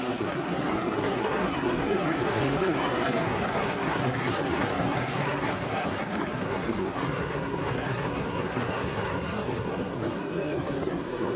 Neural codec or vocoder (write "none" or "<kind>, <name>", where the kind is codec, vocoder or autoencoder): codec, SNAC